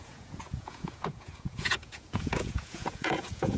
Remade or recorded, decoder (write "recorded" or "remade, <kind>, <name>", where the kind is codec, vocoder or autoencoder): remade, vocoder, Vocos